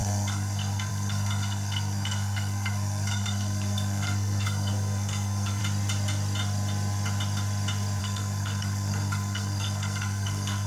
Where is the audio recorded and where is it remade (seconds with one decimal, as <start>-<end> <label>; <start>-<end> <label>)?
0.0-5.6 remade; 5.6-8.0 recorded; 8.0-10.7 remade

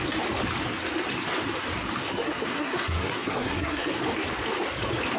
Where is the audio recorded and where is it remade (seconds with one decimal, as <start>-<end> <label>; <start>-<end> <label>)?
0.0-2.1 recorded; 2.1-3.9 remade; 3.9-5.2 recorded

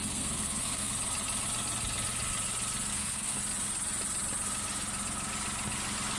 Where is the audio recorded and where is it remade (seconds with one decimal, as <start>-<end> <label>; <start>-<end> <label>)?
0.0-0.9 remade; 0.9-2.9 recorded; 2.9-3.4 remade; 3.4-6.2 recorded